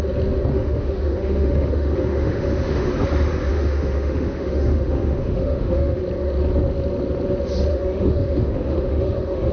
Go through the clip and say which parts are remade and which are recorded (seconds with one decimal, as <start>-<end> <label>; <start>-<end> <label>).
0.0-0.5 recorded; 0.5-2.9 remade; 2.9-3.5 recorded; 3.5-6.0 remade; 6.0-7.7 recorded; 7.7-9.5 remade